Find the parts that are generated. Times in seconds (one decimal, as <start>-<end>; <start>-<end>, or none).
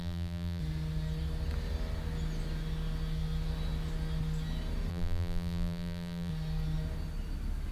0.0-0.6; 4.9-6.3